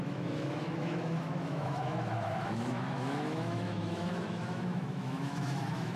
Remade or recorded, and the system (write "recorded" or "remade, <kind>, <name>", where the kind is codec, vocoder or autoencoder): remade, autoencoder, DAC-VAE